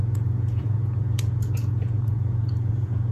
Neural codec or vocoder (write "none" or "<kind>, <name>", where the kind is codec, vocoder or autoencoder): vocoder, Vocos